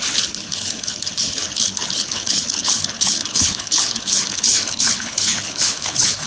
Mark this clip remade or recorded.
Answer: remade